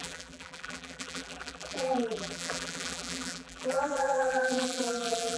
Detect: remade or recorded remade